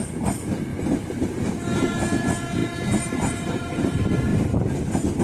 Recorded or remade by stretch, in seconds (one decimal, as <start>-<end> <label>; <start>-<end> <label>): 0.0-2.6 recorded; 2.6-3.9 remade; 3.9-4.3 recorded; 4.3-5.2 remade